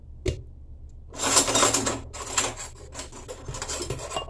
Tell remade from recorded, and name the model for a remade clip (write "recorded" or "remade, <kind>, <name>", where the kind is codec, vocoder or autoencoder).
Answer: recorded